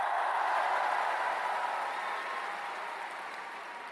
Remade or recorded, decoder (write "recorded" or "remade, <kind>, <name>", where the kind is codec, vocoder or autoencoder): recorded